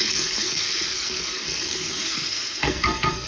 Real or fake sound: fake